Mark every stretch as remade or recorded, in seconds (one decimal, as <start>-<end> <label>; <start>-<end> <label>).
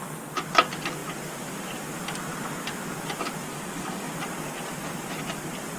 0.0-3.5 recorded; 3.5-4.1 remade; 4.1-5.8 recorded